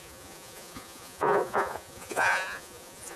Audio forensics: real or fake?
fake